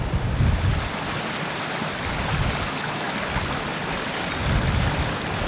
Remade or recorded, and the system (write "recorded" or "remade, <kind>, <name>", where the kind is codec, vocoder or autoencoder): recorded